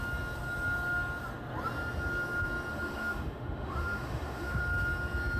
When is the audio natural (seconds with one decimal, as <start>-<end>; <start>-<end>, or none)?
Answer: 0.0-2.7; 4.6-5.4

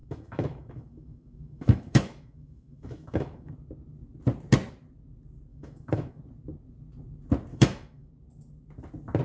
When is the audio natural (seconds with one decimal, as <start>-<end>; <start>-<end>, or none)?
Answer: 3.5-5.5; 6.2-7.5; 8.1-9.2

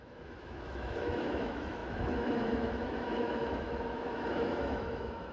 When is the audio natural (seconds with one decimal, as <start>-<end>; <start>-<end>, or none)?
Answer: none

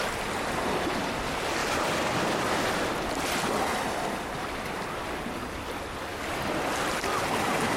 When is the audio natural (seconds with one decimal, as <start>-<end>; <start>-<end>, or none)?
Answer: 0.0-7.8

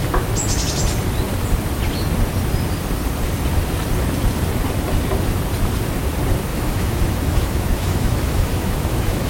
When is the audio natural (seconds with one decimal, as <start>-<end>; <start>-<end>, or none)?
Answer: 0.0-6.5

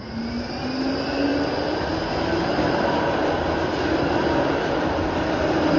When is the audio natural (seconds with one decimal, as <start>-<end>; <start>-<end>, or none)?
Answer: 0.0-5.8